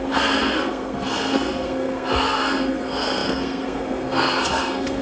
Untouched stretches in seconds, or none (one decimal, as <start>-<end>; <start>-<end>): none